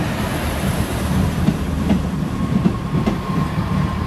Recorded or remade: recorded